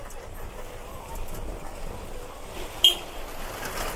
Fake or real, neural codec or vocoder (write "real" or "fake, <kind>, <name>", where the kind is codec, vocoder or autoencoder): real